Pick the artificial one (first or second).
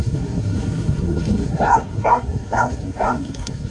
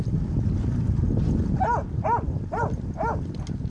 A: first